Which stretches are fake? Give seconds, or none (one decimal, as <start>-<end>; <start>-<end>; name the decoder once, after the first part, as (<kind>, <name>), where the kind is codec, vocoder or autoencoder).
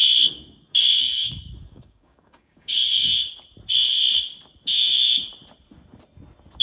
0.0-3.1 (codec, DAC)